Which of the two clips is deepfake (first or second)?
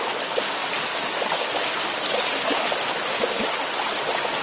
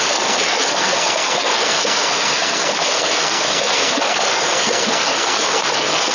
second